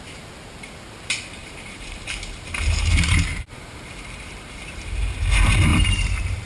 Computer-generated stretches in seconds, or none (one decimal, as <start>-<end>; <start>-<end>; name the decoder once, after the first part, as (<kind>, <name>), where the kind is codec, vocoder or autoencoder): 1.4-5.3 (vocoder, BigVGAN v2); 5.7-6.5